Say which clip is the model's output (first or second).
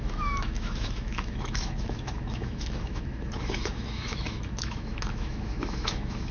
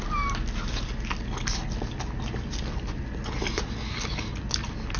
first